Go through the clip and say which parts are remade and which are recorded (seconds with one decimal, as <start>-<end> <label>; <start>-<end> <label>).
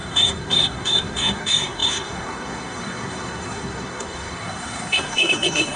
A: 0.0-5.8 remade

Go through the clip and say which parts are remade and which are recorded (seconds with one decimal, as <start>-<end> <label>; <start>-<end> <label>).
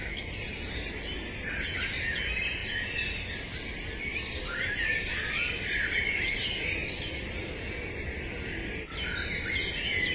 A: 0.0-10.1 recorded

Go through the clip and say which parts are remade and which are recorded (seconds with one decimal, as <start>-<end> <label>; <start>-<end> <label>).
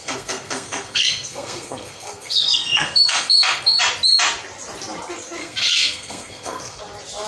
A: 0.0-3.8 remade; 3.8-5.4 recorded; 5.4-6.8 remade; 6.8-7.3 recorded